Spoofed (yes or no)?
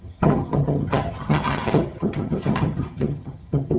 yes